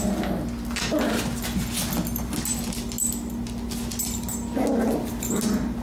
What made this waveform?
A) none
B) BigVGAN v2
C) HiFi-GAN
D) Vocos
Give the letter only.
A